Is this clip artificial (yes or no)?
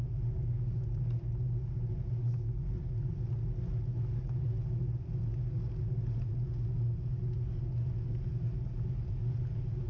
no